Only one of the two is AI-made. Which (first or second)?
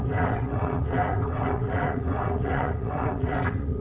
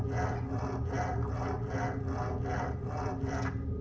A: first